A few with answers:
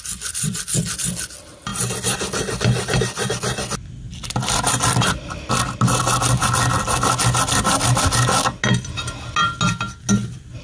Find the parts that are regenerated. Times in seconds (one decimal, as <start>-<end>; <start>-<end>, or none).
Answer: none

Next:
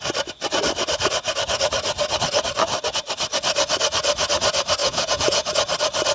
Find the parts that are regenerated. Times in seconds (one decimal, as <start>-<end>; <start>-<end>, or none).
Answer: 4.8-5.5

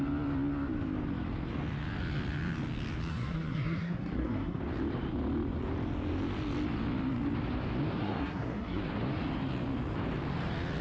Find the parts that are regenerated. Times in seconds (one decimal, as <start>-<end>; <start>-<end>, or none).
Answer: 3.1-4.6; 8.0-8.8